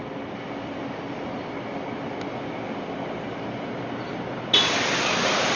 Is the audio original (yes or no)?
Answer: yes